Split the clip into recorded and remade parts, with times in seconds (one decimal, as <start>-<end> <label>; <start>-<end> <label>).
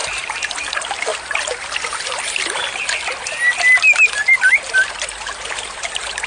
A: 0.0-0.5 remade; 0.5-6.3 recorded